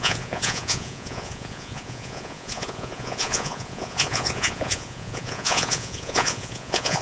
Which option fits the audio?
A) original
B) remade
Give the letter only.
B